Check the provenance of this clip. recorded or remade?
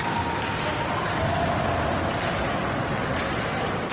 recorded